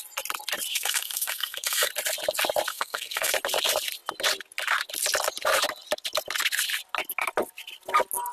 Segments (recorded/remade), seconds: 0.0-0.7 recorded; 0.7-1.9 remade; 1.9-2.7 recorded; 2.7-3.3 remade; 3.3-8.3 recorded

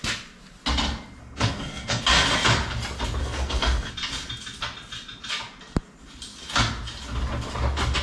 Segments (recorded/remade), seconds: 0.0-1.2 recorded; 1.2-2.0 remade; 2.0-3.2 recorded; 3.2-3.9 remade; 3.9-8.0 recorded

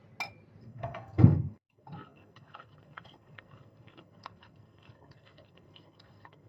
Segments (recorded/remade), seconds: 0.0-0.6 recorded; 0.6-6.5 remade

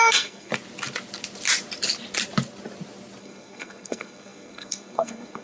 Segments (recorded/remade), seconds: 0.0-0.5 remade; 0.5-3.2 recorded; 3.2-5.4 remade

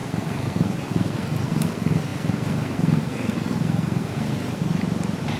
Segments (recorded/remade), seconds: 0.0-4.8 remade; 4.8-5.4 recorded